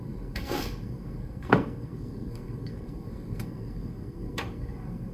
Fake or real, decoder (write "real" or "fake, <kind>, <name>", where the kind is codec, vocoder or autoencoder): fake, codec, SNAC